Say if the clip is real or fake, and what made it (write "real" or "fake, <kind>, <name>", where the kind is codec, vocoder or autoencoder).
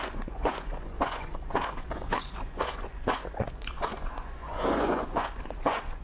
fake, vocoder, Vocos